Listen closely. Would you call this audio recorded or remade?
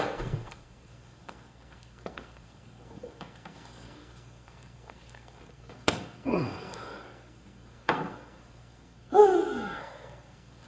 remade